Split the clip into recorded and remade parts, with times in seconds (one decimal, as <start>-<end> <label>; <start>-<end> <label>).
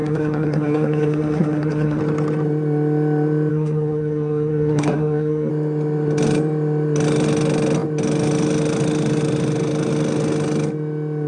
0.0-2.0 remade; 2.0-3.5 recorded; 3.5-5.5 remade; 5.5-11.3 recorded